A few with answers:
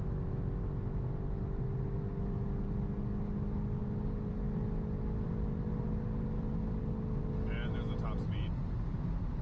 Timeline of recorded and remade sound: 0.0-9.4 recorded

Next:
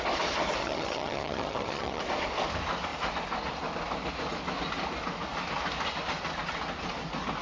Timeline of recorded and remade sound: 0.0-0.6 recorded; 0.6-2.0 remade; 2.0-7.4 recorded

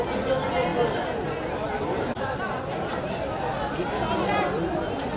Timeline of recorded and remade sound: 0.0-5.2 recorded

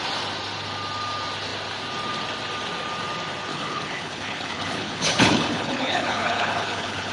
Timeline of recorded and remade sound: 0.0-3.5 recorded; 3.5-7.1 remade

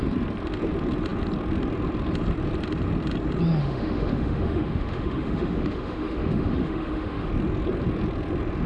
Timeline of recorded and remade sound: 0.0-3.6 recorded; 3.6-7.3 remade; 7.3-8.7 recorded

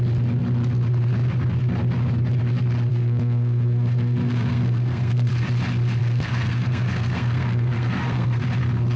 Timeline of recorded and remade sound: 0.0-2.9 recorded; 2.9-5.3 remade; 5.3-6.0 recorded; 6.0-8.4 remade; 8.4-9.0 recorded